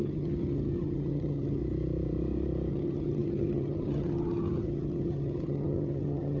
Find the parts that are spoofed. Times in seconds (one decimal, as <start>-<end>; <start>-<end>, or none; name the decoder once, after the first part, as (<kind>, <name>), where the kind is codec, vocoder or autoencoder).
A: 0.0-1.6 (vocoder, HiFi-GAN); 2.7-6.4